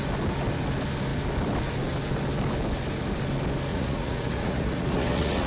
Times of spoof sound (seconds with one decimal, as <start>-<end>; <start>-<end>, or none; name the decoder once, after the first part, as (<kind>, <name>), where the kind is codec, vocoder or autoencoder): 3.7-5.5 (vocoder, Vocos)

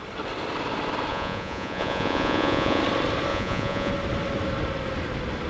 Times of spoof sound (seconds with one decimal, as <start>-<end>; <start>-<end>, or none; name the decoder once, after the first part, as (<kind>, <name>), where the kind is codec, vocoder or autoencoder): 1.1-2.8 (vocoder, Vocos); 3.3-3.9

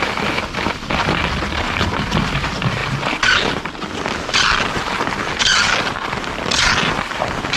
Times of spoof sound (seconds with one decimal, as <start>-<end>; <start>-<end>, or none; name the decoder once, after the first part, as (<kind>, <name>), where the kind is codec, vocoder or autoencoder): none

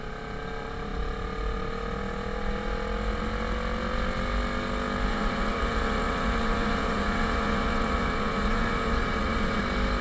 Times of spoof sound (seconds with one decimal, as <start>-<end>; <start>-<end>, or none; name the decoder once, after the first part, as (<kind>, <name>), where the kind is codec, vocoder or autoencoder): 5.1-9.6 (vocoder, Vocos)

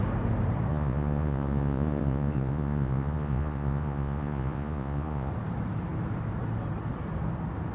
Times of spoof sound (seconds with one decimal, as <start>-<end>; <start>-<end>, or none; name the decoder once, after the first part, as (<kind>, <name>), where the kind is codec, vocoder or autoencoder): 0.7-5.3 (vocoder, Vocos)